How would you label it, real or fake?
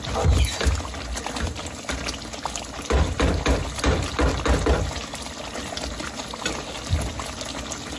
real